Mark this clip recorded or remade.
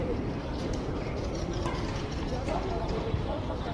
remade